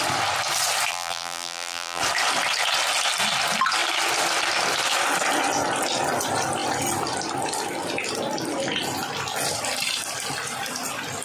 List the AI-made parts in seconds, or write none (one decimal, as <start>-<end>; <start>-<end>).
0.9-2.0

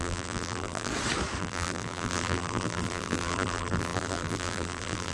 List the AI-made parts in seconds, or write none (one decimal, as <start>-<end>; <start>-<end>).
0.0-0.9; 1.4-5.1

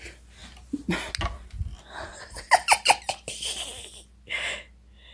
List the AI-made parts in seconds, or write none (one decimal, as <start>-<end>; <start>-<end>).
0.4-1.1

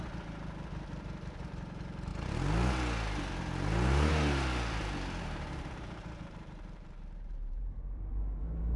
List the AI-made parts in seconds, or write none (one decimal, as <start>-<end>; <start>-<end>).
0.0-2.1; 5.2-8.8

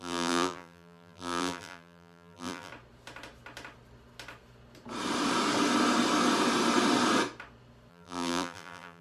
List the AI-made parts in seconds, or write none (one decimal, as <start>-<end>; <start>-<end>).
0.0-2.7; 7.9-9.0